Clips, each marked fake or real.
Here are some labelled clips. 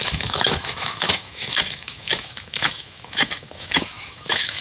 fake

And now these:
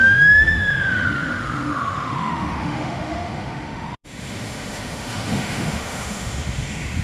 fake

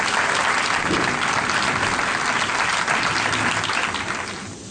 real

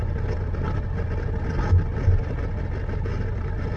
real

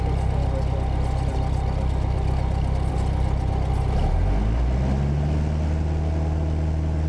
real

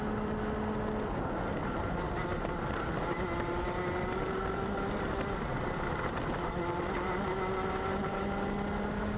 real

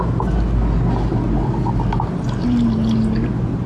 real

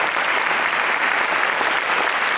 real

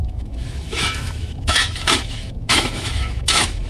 fake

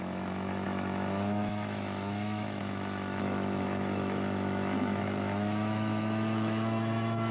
fake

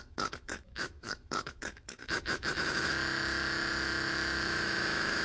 fake